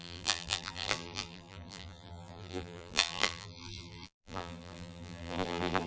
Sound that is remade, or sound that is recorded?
remade